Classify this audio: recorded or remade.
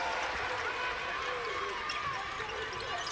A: recorded